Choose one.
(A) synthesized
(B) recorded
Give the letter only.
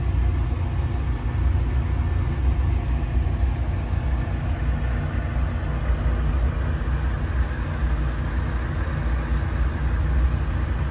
B